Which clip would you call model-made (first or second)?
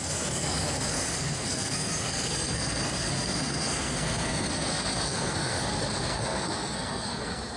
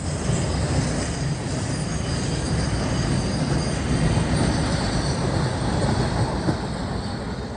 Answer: first